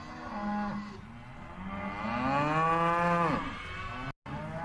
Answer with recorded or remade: recorded